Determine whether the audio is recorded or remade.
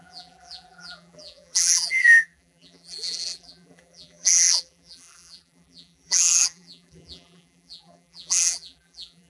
remade